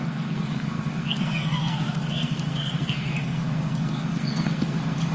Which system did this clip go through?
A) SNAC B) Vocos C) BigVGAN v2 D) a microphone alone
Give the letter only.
A